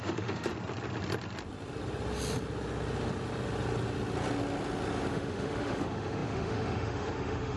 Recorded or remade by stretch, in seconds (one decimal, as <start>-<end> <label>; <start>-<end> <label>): 0.0-0.5 remade; 0.5-5.1 recorded; 5.1-7.6 remade